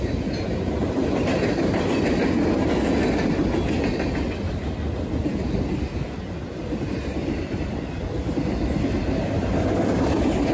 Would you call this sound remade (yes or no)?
no